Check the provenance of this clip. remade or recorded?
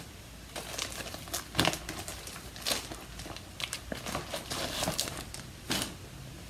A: recorded